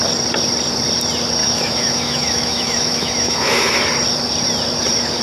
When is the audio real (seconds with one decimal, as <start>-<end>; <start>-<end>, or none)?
0.0-1.4; 3.8-5.2